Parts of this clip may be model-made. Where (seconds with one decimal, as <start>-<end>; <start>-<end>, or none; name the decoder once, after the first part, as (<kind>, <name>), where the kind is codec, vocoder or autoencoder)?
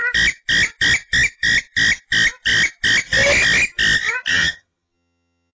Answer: 4.3-5.5 (vocoder, HiFi-GAN)